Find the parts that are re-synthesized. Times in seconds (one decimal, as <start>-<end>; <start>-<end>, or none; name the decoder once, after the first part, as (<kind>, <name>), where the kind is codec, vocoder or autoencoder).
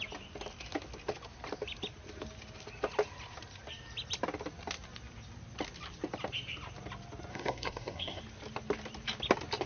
7.3-8.2 (codec, SNAC)